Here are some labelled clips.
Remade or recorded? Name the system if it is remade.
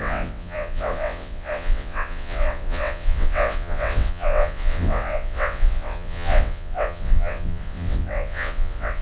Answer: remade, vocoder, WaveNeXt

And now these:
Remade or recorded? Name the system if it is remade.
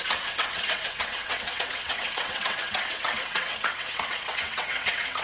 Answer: remade, vocoder, WaveNeXt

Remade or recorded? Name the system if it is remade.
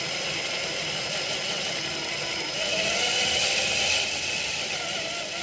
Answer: recorded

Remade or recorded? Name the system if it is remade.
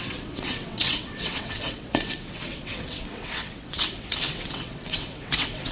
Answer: remade, vocoder, WaveNeXt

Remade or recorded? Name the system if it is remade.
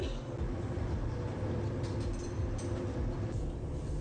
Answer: recorded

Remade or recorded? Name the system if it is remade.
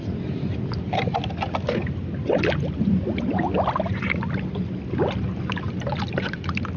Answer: recorded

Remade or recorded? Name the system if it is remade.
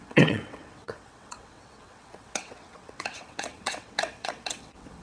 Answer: remade, vocoder, WaveNeXt